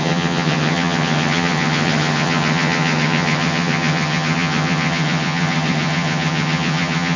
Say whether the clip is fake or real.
fake